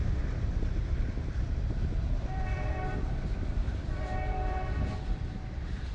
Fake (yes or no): yes